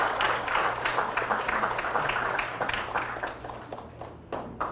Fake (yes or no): no